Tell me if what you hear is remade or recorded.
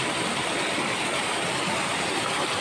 recorded